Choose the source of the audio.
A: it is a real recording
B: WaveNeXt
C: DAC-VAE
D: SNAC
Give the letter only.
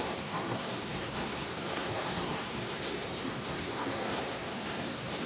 D